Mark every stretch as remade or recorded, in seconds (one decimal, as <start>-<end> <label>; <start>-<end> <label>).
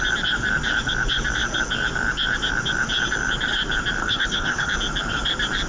0.0-4.0 recorded; 4.0-4.7 remade; 4.7-5.7 recorded